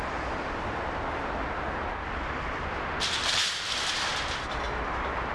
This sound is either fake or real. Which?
real